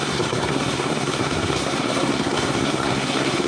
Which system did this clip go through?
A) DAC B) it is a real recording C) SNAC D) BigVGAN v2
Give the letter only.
C